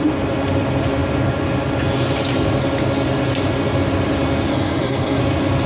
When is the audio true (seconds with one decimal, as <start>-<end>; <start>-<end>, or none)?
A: 0.0-4.5; 5.2-5.7